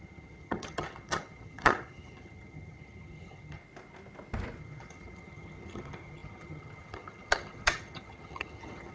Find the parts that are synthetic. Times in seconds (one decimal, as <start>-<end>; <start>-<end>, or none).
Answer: 0.0-3.6; 4.6-8.9